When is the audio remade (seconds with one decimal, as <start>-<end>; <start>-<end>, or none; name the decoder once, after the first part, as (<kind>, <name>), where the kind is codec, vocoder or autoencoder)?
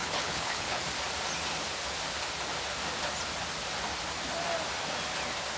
0.0-0.8 (codec, HILCodec)